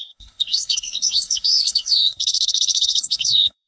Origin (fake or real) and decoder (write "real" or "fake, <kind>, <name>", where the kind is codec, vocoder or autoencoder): fake, codec, SNAC